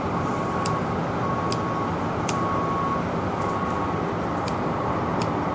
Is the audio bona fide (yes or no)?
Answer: yes